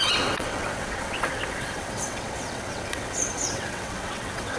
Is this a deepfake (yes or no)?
yes